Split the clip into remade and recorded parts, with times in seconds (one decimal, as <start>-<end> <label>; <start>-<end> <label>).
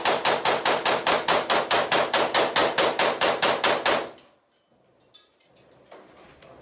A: 0.0-6.6 recorded